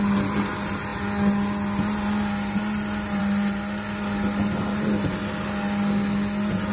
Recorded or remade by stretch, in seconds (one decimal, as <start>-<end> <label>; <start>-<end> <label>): 0.0-6.7 recorded